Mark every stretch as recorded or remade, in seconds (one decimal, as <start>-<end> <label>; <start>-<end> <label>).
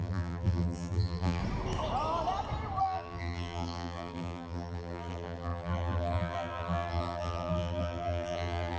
0.0-1.4 remade; 1.4-2.8 recorded; 2.8-8.8 remade